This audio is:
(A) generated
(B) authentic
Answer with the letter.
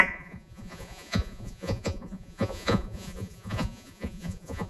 A